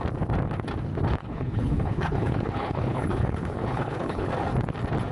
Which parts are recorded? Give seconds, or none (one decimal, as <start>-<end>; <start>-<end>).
0.0-1.2; 4.3-5.1